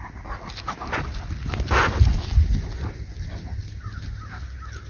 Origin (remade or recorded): recorded